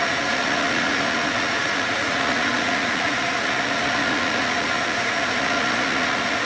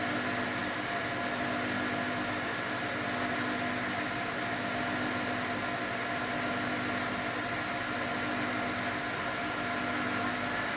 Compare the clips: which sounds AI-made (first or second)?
first